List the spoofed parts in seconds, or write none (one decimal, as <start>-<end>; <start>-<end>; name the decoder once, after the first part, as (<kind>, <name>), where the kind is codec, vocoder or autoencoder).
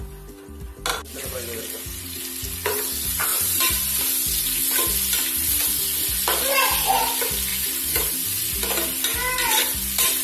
0.9-2.2 (vocoder, BigVGAN v2); 3.3-4.1; 7.5-8.1